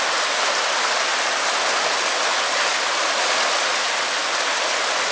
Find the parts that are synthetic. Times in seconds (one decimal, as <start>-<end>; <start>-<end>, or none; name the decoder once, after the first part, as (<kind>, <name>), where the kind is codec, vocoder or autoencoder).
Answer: none